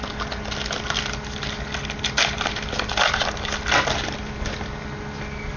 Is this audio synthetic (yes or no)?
no